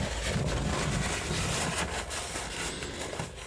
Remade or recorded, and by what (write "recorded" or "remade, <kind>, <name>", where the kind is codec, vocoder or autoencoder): recorded